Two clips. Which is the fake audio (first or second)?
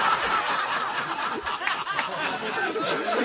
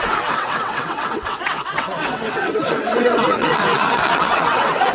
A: second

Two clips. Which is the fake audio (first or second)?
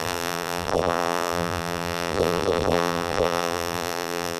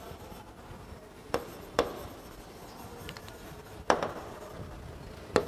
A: first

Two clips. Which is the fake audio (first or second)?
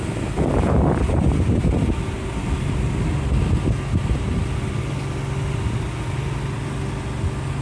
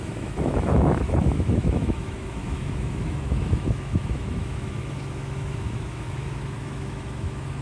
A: second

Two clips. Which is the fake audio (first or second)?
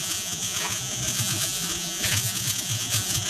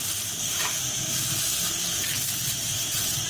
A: first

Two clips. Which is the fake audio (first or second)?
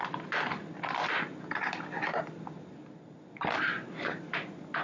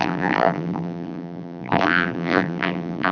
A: second